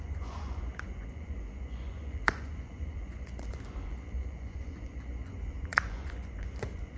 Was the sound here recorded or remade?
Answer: remade